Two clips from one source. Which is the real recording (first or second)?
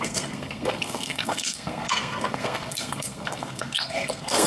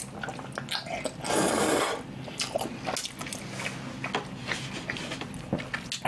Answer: second